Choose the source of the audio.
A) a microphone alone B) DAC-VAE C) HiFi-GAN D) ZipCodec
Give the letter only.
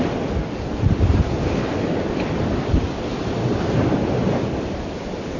A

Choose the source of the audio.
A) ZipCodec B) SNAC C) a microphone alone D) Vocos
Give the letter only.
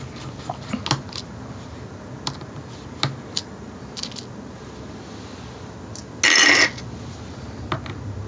C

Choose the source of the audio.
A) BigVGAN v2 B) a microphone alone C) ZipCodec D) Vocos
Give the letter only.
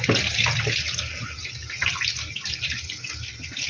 B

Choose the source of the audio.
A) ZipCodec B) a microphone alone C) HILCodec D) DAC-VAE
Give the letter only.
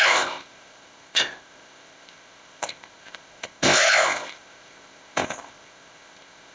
A